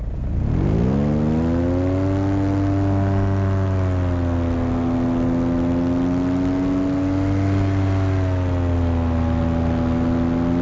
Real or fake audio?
real